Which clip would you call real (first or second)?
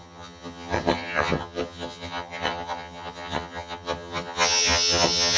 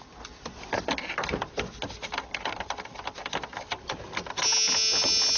second